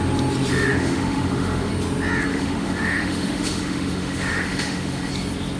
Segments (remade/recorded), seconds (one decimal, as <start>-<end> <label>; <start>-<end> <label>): 0.0-0.5 recorded; 0.5-1.7 remade; 1.7-2.3 recorded; 2.3-5.1 remade; 5.1-5.6 recorded